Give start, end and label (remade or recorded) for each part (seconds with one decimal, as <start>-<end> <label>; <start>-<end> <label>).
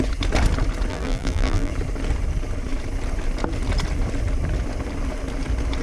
0.0-0.9 recorded; 0.9-1.7 remade; 1.7-5.8 recorded